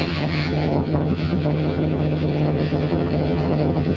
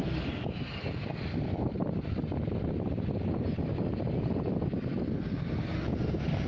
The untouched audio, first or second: second